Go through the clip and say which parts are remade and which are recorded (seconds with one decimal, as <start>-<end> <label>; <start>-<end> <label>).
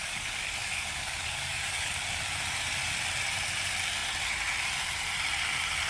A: 0.0-1.9 remade; 1.9-5.9 recorded